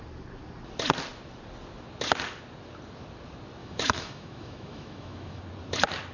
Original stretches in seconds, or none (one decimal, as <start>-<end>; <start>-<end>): 0.0-3.6; 5.4-6.1